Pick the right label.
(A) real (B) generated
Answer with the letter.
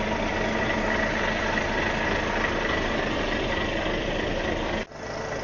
A